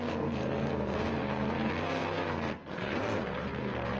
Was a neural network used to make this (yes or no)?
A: yes